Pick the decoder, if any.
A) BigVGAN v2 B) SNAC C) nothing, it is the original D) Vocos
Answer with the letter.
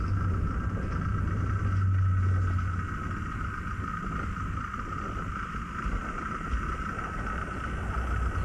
C